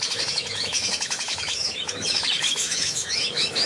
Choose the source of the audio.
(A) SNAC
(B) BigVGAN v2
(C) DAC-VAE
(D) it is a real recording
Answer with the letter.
C